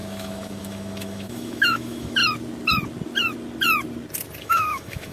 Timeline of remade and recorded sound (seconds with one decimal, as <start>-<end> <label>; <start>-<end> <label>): 0.0-2.2 remade; 2.2-4.4 recorded; 4.4-5.1 remade